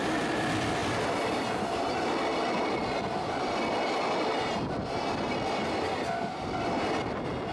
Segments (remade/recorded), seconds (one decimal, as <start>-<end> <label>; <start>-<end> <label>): 0.0-7.5 recorded